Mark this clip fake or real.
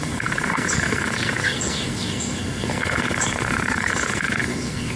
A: fake